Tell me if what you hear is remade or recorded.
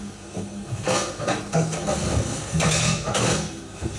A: remade